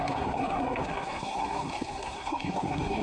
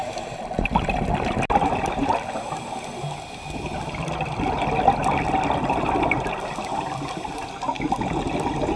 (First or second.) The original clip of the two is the second